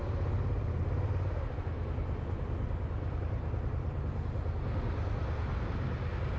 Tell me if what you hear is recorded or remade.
recorded